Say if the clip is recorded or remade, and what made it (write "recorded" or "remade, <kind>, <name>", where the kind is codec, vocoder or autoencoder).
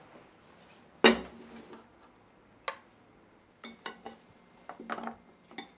recorded